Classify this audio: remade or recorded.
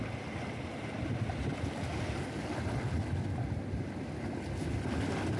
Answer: recorded